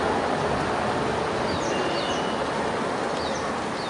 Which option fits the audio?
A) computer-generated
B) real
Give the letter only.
B